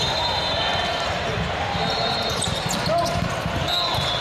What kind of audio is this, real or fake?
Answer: real